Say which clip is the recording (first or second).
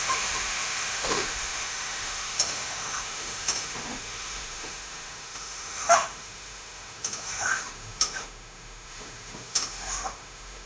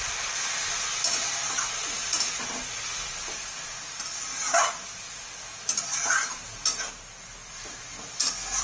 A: second